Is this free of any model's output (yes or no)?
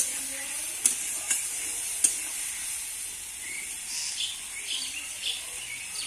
yes